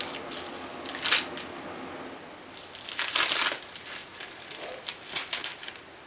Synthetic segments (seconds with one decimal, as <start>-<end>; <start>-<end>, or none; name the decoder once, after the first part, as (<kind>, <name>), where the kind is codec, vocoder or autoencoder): 5.4-6.1 (vocoder, BigVGAN v2)